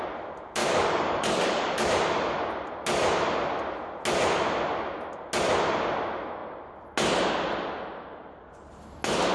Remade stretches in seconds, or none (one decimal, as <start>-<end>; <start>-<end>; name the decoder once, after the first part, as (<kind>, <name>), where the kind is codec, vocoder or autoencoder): 0.6-1.9 (codec, DAC)